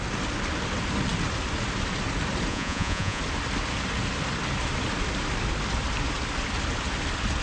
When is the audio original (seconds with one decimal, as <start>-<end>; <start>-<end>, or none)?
0.0-2.5; 3.2-7.4